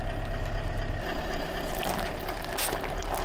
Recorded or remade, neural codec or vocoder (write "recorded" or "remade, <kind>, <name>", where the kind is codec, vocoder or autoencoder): recorded